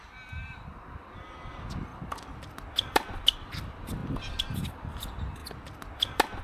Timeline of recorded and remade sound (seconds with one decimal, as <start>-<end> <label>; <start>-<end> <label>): 0.0-0.7 remade; 0.7-1.9 recorded; 1.9-2.4 remade; 2.4-6.4 recorded